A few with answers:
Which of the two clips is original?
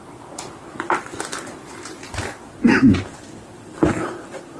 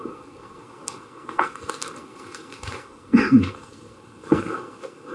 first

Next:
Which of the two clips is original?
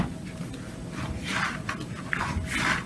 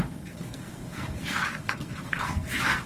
first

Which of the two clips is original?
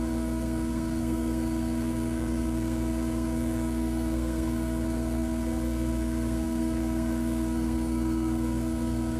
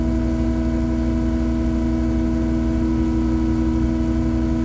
second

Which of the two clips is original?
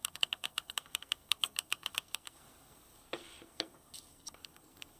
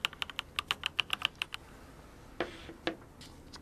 second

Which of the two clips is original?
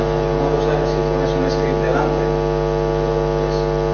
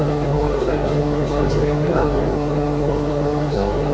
first